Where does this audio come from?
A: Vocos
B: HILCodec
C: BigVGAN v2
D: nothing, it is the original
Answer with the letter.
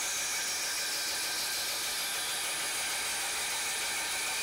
D